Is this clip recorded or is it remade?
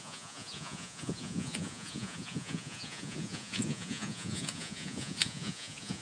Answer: remade